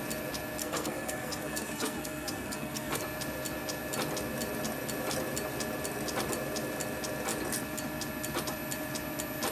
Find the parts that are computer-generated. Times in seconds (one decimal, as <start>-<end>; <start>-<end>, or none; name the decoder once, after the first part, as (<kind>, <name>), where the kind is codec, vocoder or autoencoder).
0.6-3.0 (codec, SNAC)